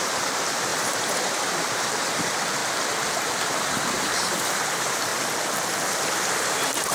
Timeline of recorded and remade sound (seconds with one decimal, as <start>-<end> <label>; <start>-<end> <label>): 0.0-2.6 remade; 2.6-3.1 recorded; 3.1-5.1 remade; 5.1-6.4 recorded; 6.4-6.9 remade

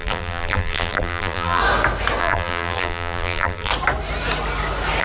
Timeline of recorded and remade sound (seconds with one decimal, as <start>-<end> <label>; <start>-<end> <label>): 0.0-1.6 remade; 1.6-2.2 recorded; 2.2-3.7 remade; 3.7-5.0 recorded

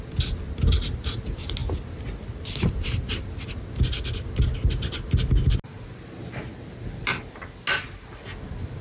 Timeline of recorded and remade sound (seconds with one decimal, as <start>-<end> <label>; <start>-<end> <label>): 0.0-8.8 recorded

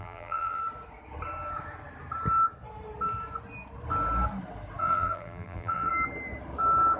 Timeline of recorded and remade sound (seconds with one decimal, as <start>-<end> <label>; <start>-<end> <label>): 0.0-0.6 remade; 0.6-4.8 recorded; 4.8-5.9 remade; 5.9-7.0 recorded

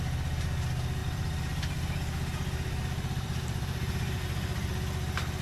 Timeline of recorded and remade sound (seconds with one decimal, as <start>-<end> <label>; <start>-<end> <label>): 0.0-1.0 recorded; 1.0-4.2 remade; 4.2-5.4 recorded

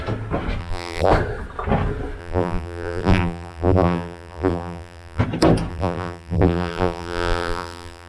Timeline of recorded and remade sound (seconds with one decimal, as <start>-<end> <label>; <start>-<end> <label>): 0.0-0.6 recorded; 0.6-1.1 remade; 1.1-2.2 recorded; 2.2-5.2 remade; 5.2-5.7 recorded; 5.7-8.1 remade

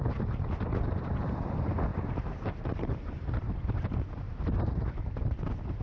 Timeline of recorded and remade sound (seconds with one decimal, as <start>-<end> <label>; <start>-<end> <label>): 0.0-1.9 recorded; 1.9-5.8 remade

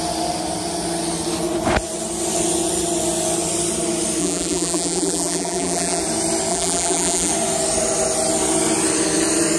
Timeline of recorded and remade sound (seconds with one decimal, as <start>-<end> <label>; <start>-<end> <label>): 0.0-4.2 recorded; 4.2-6.0 remade; 6.0-6.5 recorded; 6.5-7.3 remade; 7.3-9.6 recorded